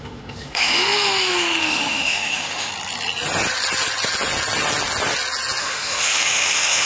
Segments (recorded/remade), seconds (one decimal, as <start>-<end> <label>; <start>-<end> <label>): 0.0-2.7 remade; 2.7-5.6 recorded; 5.6-6.9 remade